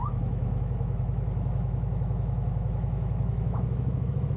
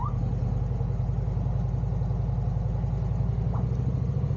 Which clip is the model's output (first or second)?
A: first